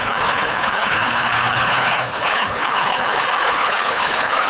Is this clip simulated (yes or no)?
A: yes